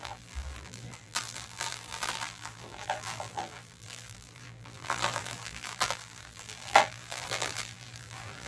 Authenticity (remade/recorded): remade